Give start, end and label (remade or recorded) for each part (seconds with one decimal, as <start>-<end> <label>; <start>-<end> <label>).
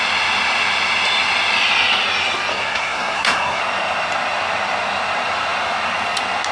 0.0-2.5 recorded; 2.5-3.6 remade; 3.6-6.5 recorded